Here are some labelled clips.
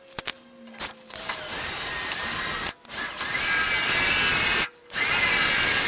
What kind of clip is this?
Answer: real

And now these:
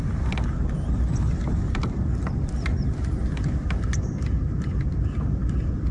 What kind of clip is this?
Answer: real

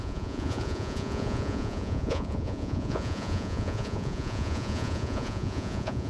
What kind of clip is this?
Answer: fake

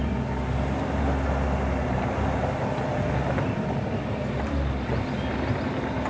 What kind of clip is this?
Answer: real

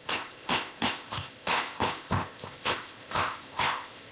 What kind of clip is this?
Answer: fake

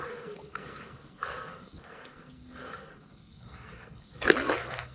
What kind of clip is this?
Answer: fake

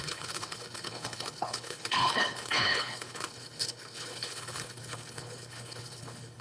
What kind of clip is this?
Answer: fake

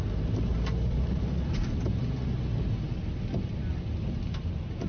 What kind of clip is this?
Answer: real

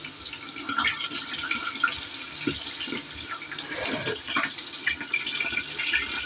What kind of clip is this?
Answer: fake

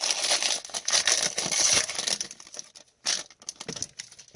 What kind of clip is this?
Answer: real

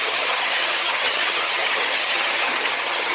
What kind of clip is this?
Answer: fake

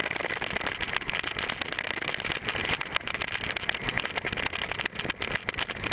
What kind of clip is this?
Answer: real